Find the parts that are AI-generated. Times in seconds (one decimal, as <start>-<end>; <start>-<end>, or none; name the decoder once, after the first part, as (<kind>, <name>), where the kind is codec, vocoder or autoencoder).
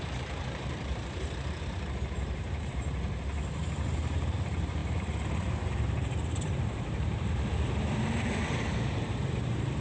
0.0-9.8 (vocoder, BigVGAN v2)